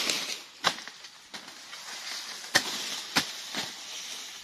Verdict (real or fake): real